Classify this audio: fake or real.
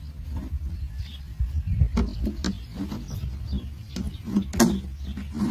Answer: real